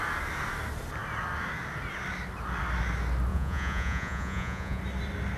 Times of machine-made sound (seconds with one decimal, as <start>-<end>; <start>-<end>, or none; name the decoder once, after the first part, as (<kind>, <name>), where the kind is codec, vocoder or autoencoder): 3.3-4.8 (vocoder, Vocos)